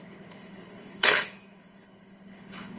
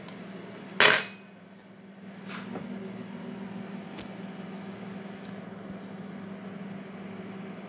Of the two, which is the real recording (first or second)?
second